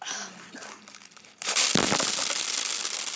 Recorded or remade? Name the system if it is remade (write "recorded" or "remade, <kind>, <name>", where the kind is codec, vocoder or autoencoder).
recorded